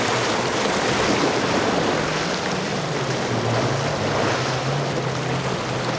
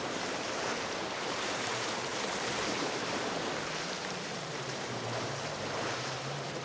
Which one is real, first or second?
first